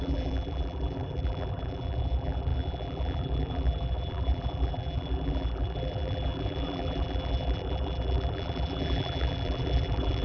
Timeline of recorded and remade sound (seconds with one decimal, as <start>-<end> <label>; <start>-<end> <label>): 0.0-10.2 remade